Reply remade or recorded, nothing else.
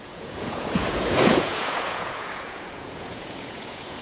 remade